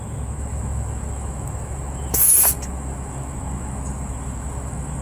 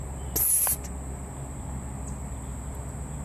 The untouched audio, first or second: second